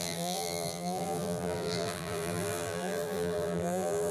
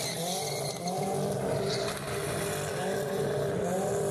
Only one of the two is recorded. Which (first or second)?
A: second